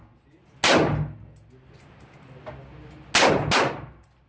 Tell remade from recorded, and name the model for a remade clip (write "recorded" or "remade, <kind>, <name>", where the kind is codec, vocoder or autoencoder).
recorded